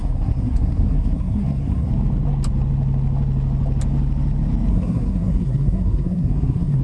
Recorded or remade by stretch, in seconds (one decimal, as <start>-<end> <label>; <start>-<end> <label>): 0.0-1.9 remade; 1.9-4.7 recorded; 4.7-6.8 remade